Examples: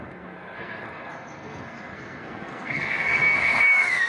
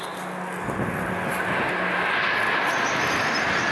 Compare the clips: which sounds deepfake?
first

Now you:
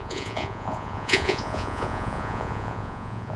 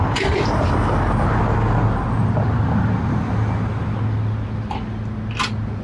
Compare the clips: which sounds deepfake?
first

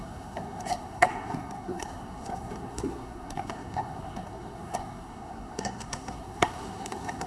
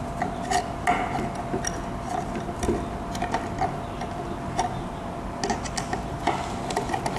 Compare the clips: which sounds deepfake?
first